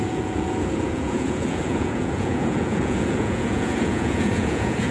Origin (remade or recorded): remade